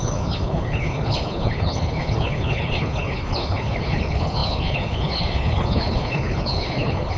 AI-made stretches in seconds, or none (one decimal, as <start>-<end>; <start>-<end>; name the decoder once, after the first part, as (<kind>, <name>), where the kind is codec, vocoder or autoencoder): 0.0-7.2 (codec, HILCodec)

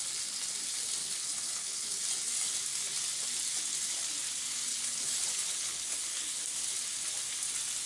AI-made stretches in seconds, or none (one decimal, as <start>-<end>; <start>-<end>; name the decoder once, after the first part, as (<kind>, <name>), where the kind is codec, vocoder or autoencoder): 1.0-2.0 (codec, HILCodec); 4.7-6.4

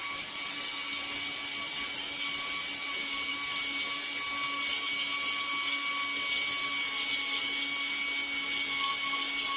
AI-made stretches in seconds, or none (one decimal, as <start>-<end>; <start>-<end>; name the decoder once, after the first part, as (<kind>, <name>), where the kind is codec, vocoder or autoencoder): none

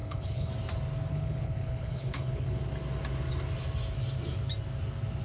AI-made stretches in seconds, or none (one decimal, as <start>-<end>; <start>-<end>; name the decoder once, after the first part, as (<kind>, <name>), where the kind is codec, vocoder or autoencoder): 0.0-0.5 (codec, HILCodec); 1.1-2.6

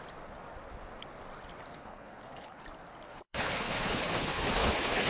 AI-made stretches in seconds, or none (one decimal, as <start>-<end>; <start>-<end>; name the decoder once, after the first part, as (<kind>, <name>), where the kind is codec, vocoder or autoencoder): 1.7-2.6 (codec, HILCodec); 3.1-5.1